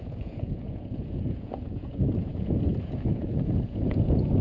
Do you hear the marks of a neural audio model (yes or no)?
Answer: yes